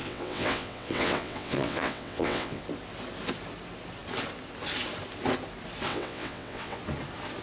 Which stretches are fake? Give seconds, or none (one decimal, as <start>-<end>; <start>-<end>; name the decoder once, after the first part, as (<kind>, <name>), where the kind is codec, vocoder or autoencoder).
0.0-2.6 (vocoder, WaveNeXt); 5.9-6.8